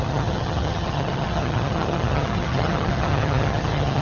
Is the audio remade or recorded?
remade